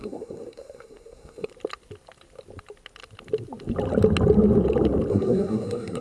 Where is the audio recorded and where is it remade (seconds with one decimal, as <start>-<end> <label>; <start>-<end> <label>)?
0.0-1.5 remade; 1.5-5.1 recorded; 5.1-6.0 remade